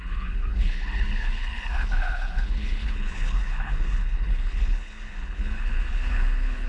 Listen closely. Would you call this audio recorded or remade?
remade